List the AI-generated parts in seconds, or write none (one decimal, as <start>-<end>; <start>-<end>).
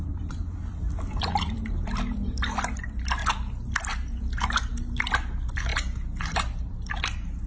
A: 0.0-3.2; 5.1-5.7; 6.2-7.5